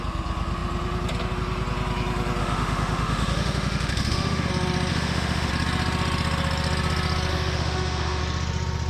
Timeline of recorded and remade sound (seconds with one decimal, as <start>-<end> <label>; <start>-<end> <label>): 0.0-2.4 recorded; 2.4-4.5 remade; 4.5-4.9 recorded; 4.9-5.5 remade; 5.5-7.3 recorded; 7.3-8.2 remade; 8.2-8.9 recorded